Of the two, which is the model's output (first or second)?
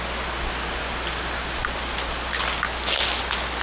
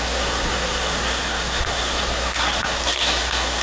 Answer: second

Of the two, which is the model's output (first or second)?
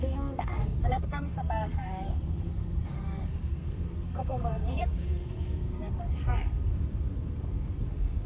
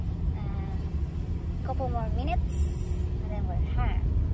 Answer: first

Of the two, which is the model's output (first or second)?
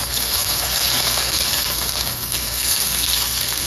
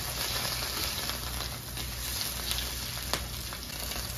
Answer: first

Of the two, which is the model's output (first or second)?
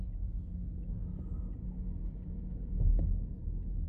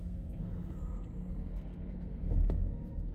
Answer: second